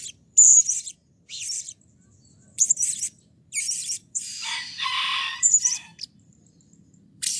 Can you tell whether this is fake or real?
fake